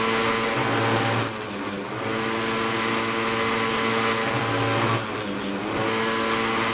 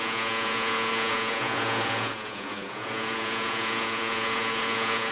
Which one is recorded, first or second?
first